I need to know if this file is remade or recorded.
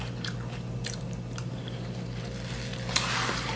recorded